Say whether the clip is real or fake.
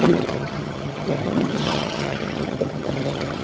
fake